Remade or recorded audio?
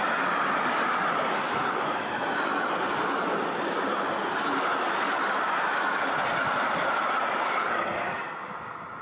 recorded